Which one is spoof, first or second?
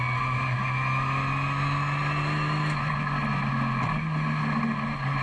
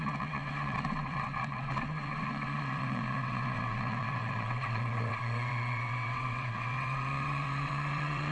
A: second